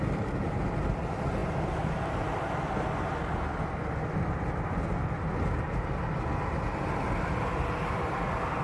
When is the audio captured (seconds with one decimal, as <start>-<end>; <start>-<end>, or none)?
0.0-8.6